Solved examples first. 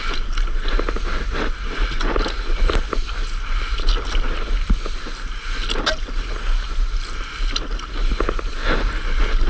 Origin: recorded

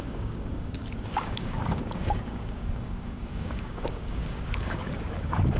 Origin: remade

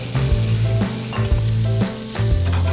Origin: recorded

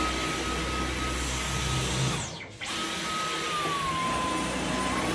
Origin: recorded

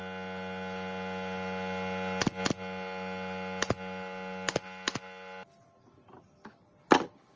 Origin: recorded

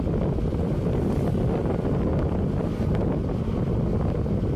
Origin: recorded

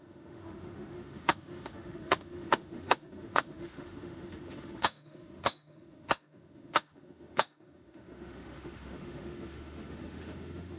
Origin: remade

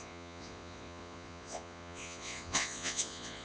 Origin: remade